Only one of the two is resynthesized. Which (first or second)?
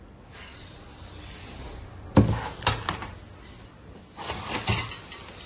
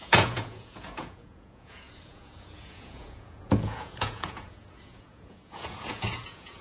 second